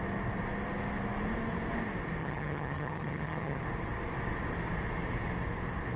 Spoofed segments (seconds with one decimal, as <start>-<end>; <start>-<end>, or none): 2.2-3.6